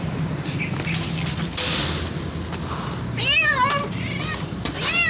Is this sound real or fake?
real